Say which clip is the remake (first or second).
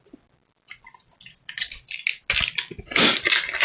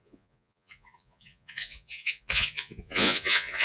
second